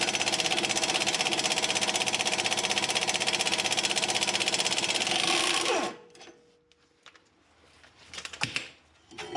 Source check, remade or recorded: recorded